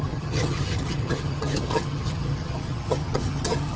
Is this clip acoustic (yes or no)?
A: no